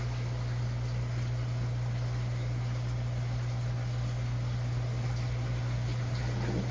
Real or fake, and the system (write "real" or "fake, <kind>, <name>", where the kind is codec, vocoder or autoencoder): real